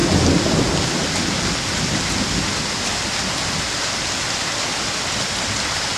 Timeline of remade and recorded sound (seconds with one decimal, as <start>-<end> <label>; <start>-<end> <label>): 0.0-6.0 recorded

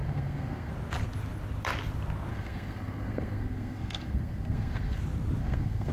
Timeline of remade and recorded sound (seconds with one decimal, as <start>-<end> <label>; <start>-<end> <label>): 0.0-0.7 remade; 0.7-2.3 recorded; 2.3-5.0 remade; 5.0-5.4 recorded; 5.4-5.9 remade